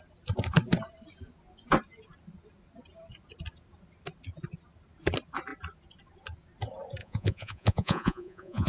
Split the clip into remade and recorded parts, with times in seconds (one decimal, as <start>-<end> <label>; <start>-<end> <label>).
0.0-7.0 recorded; 7.0-8.7 remade